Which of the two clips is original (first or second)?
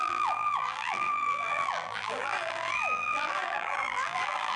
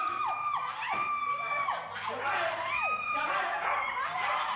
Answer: second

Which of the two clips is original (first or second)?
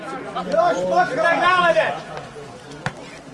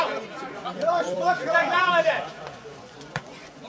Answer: first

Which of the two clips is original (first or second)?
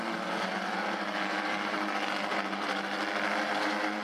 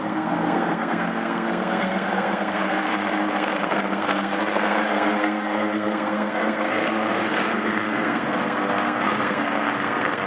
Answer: first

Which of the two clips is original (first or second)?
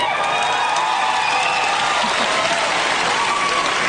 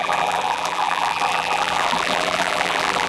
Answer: first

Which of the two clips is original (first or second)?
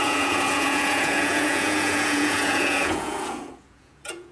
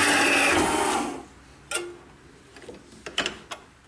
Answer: second